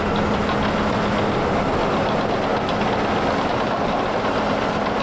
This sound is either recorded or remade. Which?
recorded